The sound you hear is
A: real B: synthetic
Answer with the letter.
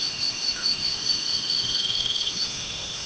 B